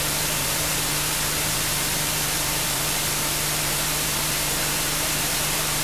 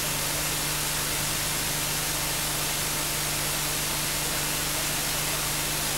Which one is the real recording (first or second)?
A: second